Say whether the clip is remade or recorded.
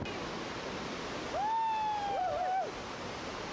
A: recorded